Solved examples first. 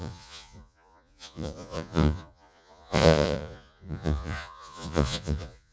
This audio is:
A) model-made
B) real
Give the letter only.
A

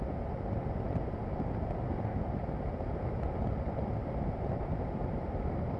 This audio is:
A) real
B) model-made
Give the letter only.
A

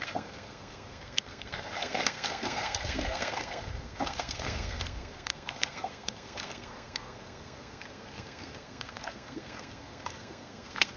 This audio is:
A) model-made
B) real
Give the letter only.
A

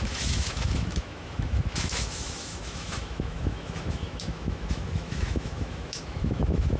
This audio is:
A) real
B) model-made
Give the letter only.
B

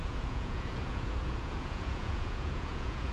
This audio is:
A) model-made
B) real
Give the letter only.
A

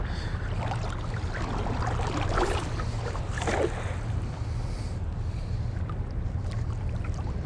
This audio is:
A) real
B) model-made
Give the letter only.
A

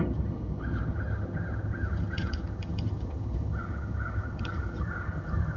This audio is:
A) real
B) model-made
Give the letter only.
B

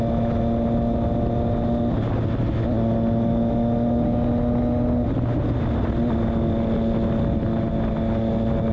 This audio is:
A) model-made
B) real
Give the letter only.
B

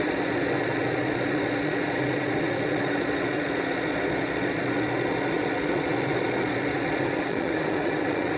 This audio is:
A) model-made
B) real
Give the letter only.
A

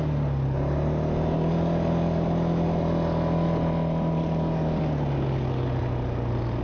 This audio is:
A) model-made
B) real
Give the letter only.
B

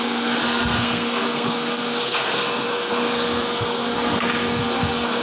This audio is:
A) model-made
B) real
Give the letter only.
A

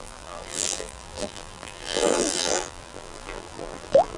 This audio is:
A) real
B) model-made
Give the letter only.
B